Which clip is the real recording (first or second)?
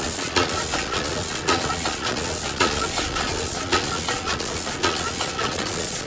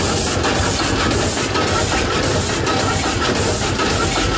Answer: second